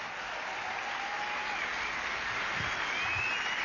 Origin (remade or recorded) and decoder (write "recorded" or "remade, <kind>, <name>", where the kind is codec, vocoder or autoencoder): recorded